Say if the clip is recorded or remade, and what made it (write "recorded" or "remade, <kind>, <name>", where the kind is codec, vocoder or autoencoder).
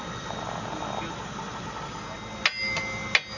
recorded